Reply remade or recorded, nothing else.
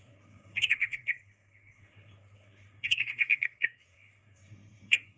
remade